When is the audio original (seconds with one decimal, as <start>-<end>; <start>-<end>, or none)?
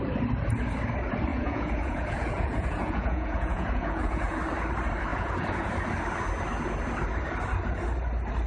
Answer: 0.0-1.3; 4.4-5.1; 5.7-8.5